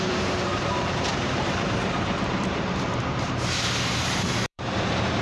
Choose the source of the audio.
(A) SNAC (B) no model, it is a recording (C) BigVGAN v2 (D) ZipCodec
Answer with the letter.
C